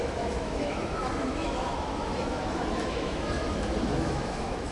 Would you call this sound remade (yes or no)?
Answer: yes